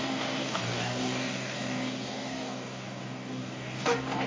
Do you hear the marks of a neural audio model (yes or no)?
yes